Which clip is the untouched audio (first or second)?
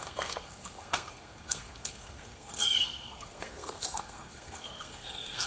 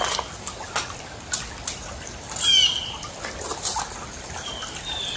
second